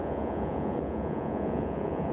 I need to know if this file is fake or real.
fake